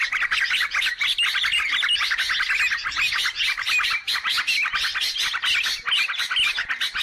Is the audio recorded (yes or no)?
yes